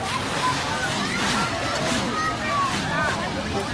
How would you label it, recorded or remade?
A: recorded